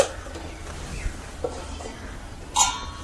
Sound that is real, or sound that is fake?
real